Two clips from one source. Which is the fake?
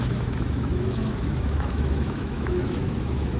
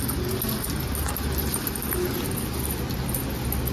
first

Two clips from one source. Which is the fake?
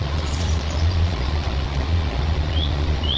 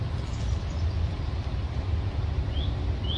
first